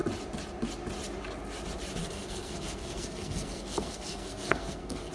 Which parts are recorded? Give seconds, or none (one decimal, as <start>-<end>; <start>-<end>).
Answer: 0.0-2.0